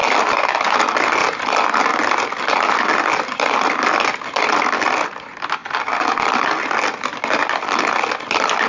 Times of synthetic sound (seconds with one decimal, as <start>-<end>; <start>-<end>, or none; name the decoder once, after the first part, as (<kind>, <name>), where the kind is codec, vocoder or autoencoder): none